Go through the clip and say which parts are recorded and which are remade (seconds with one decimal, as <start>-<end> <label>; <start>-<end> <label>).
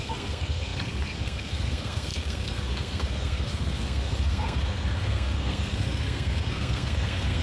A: 0.0-7.4 remade